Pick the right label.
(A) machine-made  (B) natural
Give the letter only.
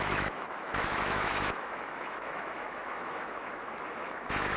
A